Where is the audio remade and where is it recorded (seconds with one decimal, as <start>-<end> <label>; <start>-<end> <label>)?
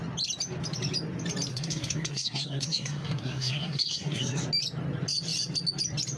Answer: 0.0-1.5 recorded; 1.5-4.4 remade; 4.4-6.2 recorded